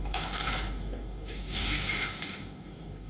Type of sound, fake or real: fake